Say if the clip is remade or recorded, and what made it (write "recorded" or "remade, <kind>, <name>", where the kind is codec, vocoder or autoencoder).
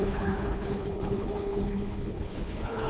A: remade, codec, HILCodec